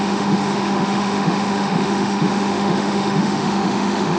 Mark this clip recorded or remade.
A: remade